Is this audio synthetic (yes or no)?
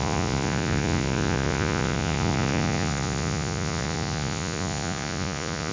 yes